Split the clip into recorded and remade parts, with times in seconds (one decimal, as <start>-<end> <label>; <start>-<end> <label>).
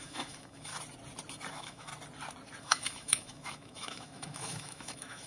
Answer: 0.0-0.7 remade; 0.7-1.5 recorded; 1.5-1.9 remade; 1.9-2.6 recorded; 2.6-5.3 remade